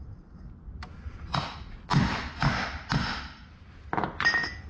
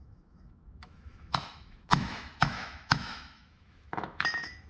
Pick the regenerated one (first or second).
second